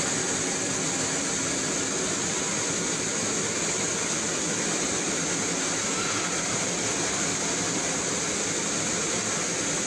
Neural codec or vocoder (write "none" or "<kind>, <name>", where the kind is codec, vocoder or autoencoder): none